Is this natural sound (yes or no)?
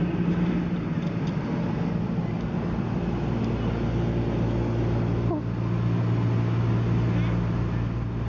yes